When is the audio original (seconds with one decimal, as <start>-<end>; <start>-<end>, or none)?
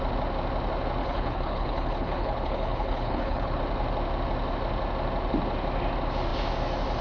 0.0-1.0; 3.6-7.0